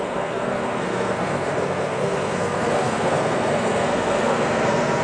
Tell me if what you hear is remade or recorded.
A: remade